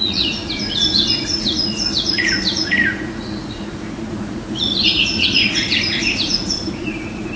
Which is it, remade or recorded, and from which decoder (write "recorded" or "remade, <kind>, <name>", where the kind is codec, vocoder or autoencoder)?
remade, vocoder, Vocos